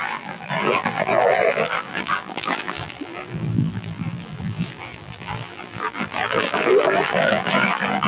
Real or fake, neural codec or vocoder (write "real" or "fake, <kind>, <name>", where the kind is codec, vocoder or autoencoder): fake, vocoder, BigVGAN v2